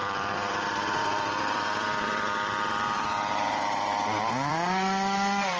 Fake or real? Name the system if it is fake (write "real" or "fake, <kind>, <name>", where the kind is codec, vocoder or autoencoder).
fake, vocoder, BigVGAN v2